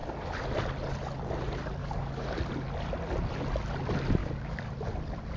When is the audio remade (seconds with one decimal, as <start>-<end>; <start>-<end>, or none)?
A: 1.8-2.4; 4.2-4.7